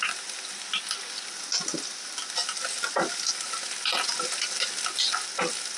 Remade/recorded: recorded